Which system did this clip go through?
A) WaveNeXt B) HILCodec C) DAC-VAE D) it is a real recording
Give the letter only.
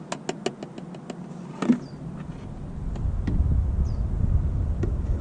D